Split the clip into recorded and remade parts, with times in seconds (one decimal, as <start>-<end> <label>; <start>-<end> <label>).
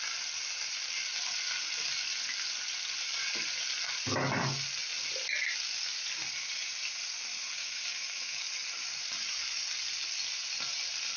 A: 0.0-7.6 recorded; 7.6-8.4 remade; 8.4-11.2 recorded